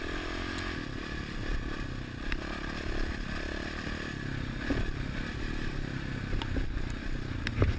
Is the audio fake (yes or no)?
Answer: no